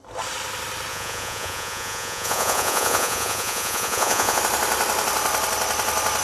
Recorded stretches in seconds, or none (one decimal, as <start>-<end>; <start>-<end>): 0.0-0.9; 4.4-6.2